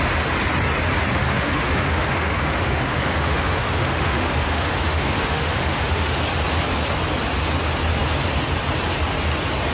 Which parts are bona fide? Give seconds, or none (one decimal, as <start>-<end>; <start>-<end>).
0.0-1.1; 6.2-9.7